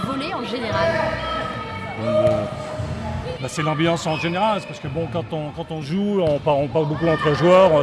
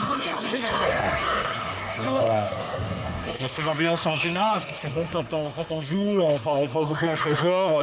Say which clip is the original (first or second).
first